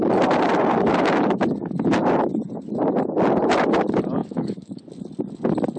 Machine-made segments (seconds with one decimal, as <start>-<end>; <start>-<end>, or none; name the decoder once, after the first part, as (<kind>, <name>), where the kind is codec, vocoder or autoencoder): 4.2-4.8 (autoencoder, DAC-VAE)